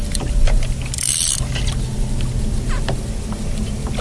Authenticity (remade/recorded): recorded